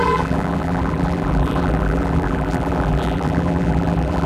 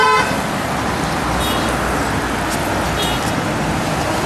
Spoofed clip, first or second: first